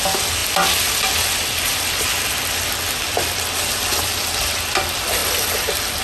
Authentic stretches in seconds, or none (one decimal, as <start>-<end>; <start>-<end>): 0.0-5.2